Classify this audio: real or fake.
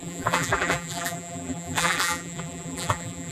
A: fake